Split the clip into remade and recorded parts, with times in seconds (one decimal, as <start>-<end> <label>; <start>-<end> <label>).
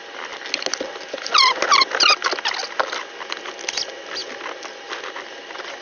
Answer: 0.0-5.8 recorded